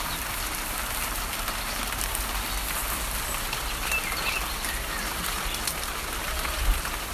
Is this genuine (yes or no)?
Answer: yes